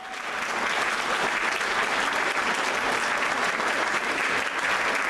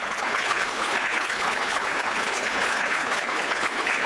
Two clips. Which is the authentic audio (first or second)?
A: first